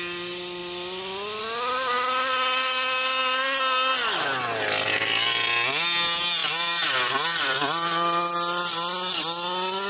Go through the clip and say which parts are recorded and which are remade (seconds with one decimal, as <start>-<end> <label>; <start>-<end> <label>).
0.0-6.4 recorded; 6.4-8.3 remade; 8.3-9.9 recorded